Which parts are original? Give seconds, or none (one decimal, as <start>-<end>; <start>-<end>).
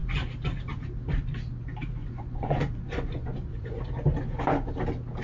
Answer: 0.0-2.0; 3.8-5.2